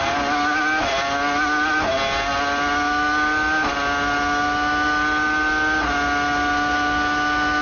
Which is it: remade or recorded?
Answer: recorded